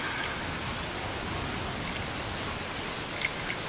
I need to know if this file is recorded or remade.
recorded